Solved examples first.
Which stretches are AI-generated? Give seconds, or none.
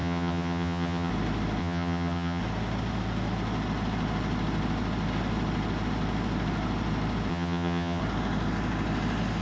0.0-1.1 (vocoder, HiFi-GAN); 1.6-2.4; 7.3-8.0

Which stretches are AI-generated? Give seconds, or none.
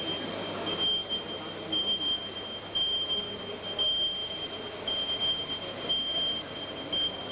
none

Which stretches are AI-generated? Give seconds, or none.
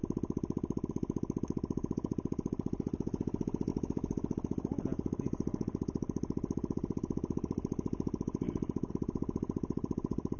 none